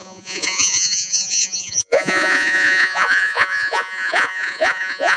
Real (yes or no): no